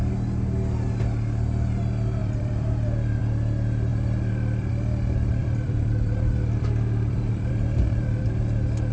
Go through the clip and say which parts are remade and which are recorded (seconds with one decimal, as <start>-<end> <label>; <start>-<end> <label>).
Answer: 0.0-2.2 recorded; 2.2-3.2 remade; 3.2-3.9 recorded; 3.9-4.7 remade; 4.7-5.4 recorded; 5.4-8.3 remade; 8.3-8.9 recorded